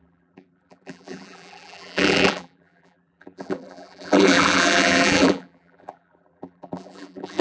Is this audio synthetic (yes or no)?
yes